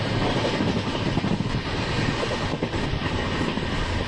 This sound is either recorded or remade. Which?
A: recorded